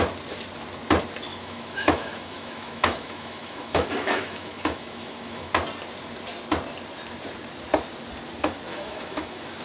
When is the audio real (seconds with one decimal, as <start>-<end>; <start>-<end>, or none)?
0.0-1.3; 5.5-8.7